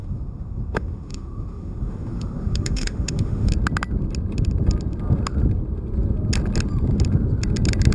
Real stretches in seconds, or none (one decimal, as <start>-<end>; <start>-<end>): 3.5-7.9